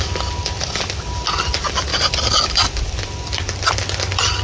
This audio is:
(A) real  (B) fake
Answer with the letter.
A